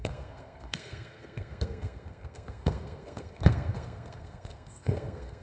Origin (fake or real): fake